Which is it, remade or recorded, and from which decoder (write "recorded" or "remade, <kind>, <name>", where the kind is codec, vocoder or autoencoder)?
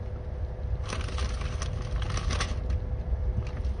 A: recorded